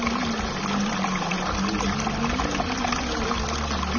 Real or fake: real